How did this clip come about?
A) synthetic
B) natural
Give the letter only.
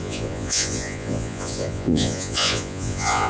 A